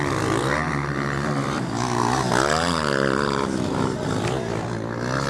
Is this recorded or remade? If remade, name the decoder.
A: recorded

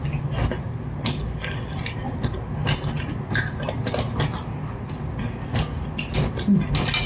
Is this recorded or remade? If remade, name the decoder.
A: recorded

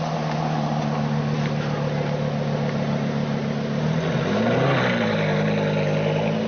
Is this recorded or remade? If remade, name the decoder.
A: recorded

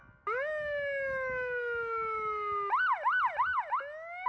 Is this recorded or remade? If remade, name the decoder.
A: recorded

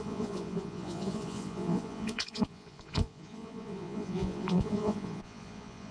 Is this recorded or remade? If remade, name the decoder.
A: remade, vocoder, Vocos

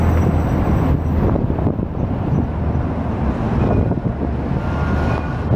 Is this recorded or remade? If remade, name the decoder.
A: recorded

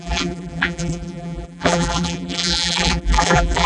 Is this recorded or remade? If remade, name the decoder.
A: remade, vocoder, BigVGAN v2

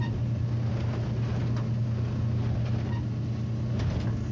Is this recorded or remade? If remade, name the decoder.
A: recorded